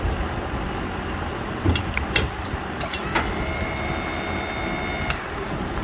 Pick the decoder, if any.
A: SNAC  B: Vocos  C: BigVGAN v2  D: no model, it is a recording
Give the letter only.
D